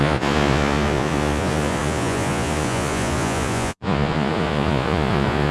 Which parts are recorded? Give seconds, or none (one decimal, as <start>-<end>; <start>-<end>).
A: none